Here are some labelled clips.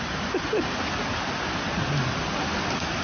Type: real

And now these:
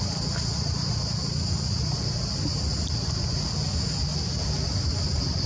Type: real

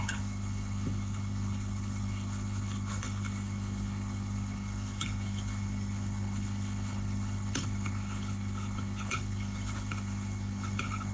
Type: fake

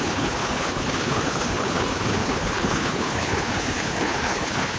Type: fake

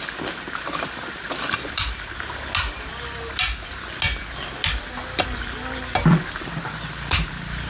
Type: real